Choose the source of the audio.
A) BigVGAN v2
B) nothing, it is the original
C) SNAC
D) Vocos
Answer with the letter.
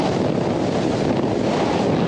B